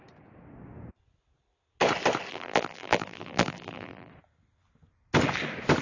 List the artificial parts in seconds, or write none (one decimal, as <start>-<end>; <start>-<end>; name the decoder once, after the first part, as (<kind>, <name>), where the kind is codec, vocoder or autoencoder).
2.3-4.1 (vocoder, BigVGAN v2)